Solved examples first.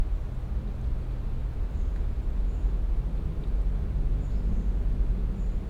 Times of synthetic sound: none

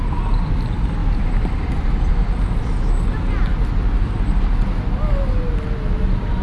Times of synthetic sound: none